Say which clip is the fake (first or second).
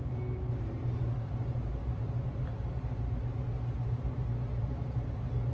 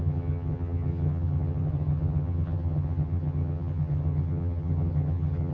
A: second